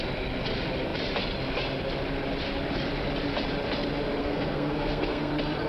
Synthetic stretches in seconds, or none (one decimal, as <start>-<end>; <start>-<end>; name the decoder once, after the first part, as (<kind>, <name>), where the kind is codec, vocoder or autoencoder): 4.2-5.3 (codec, SNAC)